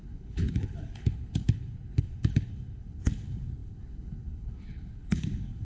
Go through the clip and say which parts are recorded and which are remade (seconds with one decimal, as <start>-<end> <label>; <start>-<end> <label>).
0.0-5.6 remade

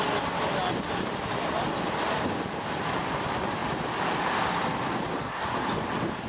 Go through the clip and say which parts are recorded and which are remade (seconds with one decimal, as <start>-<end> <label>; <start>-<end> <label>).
0.0-6.3 recorded

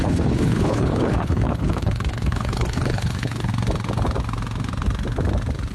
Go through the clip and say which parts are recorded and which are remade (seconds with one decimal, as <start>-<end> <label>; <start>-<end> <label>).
0.0-3.5 remade; 3.5-5.7 recorded

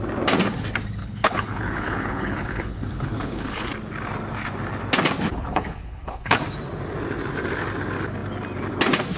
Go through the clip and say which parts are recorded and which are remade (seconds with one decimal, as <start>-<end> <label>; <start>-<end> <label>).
0.0-1.0 recorded; 1.0-3.7 remade; 3.7-5.3 recorded; 5.3-6.4 remade; 6.4-9.2 recorded

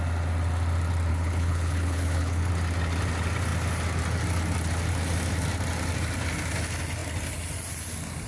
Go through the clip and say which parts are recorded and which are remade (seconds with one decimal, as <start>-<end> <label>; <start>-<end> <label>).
0.0-1.1 recorded; 1.1-2.5 remade; 2.5-8.3 recorded

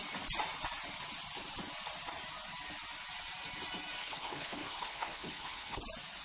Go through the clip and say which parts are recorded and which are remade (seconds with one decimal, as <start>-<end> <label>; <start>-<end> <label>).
0.0-4.0 recorded; 4.0-5.8 remade; 5.8-6.2 recorded

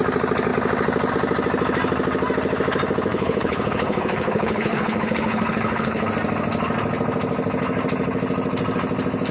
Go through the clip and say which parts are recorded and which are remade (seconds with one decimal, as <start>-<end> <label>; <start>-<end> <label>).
0.0-3.1 recorded; 3.1-6.1 remade; 6.1-9.3 recorded

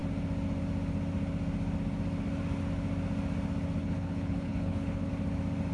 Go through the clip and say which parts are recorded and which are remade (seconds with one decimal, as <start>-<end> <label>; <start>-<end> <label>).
0.0-3.8 recorded; 3.8-5.1 remade; 5.1-5.7 recorded